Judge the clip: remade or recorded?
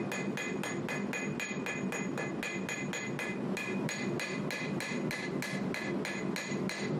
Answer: recorded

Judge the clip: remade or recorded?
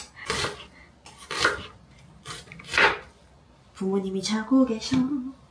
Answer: recorded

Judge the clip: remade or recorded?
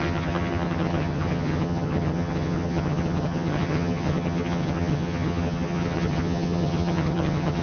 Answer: remade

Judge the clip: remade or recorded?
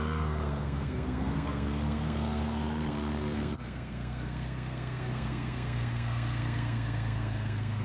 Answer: remade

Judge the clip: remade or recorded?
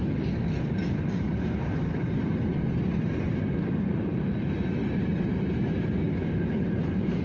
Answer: recorded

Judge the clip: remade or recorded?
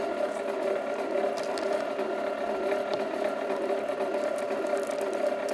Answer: recorded